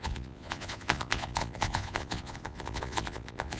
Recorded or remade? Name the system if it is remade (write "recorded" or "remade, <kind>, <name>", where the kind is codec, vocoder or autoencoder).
remade, vocoder, Vocos